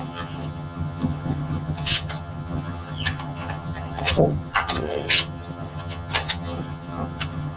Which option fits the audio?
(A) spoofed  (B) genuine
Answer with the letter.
A